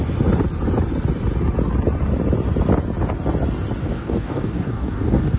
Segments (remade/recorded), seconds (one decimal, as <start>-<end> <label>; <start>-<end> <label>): 0.0-3.8 recorded; 3.8-5.4 remade